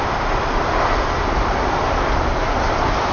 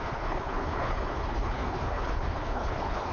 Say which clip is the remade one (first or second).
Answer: second